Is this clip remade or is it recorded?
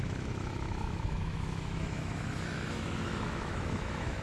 remade